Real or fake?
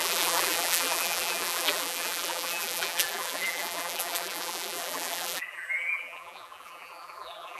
fake